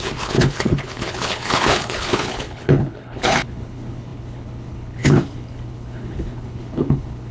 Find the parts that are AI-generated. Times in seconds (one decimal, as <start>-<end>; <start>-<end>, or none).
0.0-7.3